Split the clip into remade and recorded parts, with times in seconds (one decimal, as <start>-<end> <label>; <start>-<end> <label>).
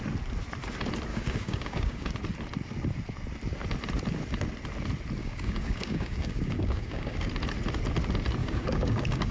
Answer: 0.0-1.1 recorded; 1.1-2.1 remade; 2.1-5.2 recorded; 5.2-7.3 remade; 7.3-8.4 recorded; 8.4-9.3 remade